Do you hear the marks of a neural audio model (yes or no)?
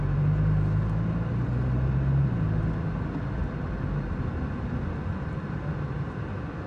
no